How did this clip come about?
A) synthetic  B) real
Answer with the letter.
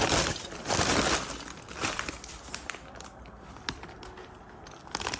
B